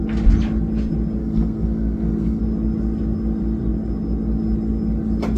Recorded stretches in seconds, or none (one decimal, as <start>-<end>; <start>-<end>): 0.0-1.2; 2.4-5.4